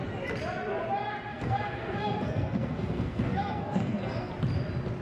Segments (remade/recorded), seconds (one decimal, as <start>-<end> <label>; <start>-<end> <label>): 0.0-1.3 recorded; 1.3-4.3 remade; 4.3-5.0 recorded